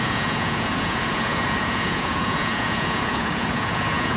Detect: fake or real fake